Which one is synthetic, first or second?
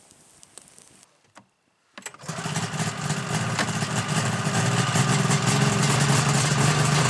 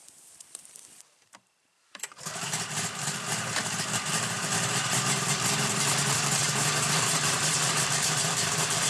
second